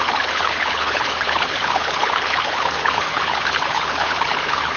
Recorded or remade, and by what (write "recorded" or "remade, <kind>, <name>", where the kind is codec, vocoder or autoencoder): remade, codec, HILCodec